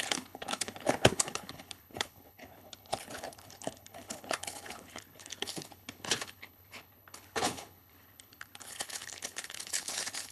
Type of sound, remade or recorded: remade